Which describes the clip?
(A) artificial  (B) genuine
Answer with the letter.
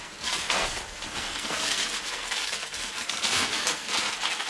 A